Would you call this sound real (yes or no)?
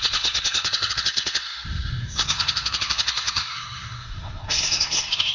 no